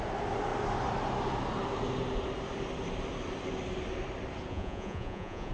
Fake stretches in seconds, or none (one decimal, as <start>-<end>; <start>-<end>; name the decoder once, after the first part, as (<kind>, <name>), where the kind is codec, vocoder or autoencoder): 4.5-5.5 (vocoder, Vocos)